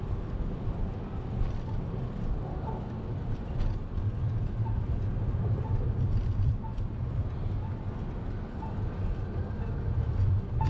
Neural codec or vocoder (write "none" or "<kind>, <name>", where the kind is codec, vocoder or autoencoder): none